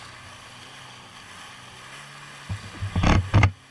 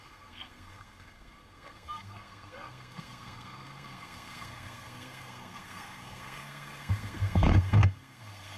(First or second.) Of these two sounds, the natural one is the first